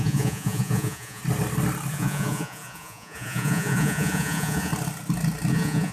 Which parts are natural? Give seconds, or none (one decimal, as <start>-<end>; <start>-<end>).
1.2-1.9; 4.7-5.5